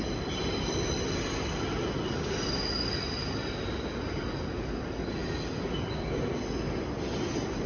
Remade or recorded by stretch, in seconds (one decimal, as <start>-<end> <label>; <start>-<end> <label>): 0.0-7.7 recorded